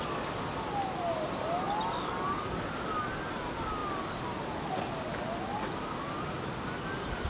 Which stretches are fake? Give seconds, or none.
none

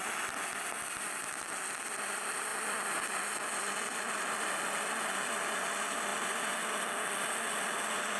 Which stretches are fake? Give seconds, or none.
none

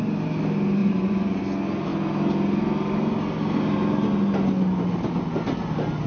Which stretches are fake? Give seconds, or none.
0.8-1.4 (vocoder, Vocos)

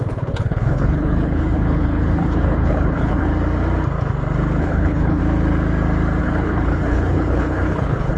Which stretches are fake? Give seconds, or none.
0.0-3.3 (codec, HILCodec); 4.6-5.2; 6.2-8.2

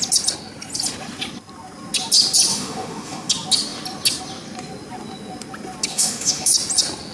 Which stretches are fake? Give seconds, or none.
2.5-3.3 (autoencoder, DAC-VAE); 5.9-6.5

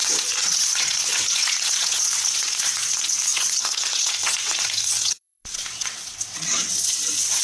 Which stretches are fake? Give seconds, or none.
0.0-7.4 (vocoder, WaveNeXt)